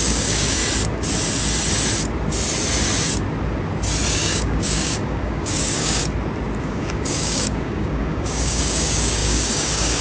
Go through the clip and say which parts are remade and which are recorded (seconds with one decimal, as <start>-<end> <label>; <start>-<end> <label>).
0.0-0.6 remade; 0.6-4.1 recorded; 4.1-6.0 remade; 6.0-6.6 recorded; 6.6-10.0 remade

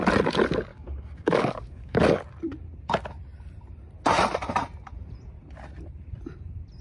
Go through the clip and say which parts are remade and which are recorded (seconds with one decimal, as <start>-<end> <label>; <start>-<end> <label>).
0.0-0.7 recorded; 0.7-2.2 remade; 2.2-6.8 recorded

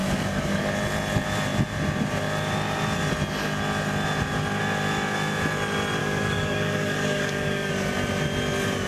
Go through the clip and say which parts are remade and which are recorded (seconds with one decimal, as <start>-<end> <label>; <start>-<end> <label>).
0.0-0.6 remade; 0.6-6.0 recorded; 6.0-7.7 remade; 7.7-8.9 recorded

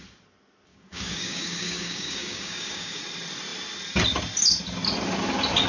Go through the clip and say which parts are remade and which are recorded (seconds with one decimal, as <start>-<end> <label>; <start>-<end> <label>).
0.0-0.7 recorded; 0.7-3.0 remade; 3.0-5.7 recorded

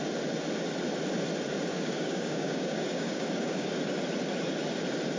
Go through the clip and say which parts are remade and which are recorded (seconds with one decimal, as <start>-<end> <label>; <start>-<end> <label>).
0.0-1.7 recorded; 1.7-3.8 remade; 3.8-5.2 recorded